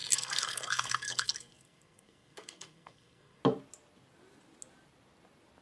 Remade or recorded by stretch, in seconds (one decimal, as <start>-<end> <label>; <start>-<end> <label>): 0.0-3.4 remade; 3.4-5.6 recorded